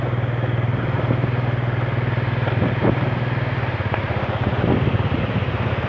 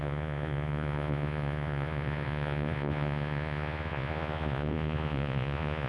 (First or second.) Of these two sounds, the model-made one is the second